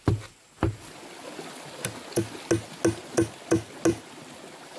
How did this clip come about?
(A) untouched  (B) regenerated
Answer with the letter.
A